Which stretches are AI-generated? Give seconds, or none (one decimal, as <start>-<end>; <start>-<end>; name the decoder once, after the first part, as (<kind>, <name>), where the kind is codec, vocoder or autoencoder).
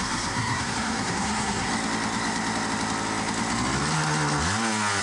0.0-1.7 (codec, SNAC)